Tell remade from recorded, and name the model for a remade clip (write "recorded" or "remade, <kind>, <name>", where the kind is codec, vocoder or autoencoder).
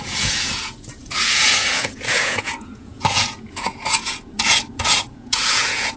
remade, vocoder, Vocos